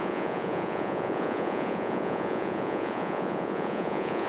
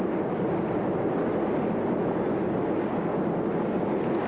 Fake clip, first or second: first